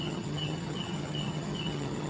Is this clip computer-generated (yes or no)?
yes